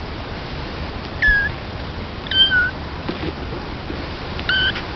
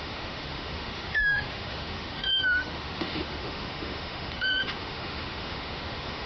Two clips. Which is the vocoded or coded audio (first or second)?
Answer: second